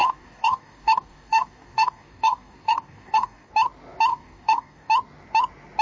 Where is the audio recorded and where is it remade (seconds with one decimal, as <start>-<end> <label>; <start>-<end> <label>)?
0.0-3.5 remade; 3.5-4.1 recorded; 4.1-4.9 remade; 4.9-5.8 recorded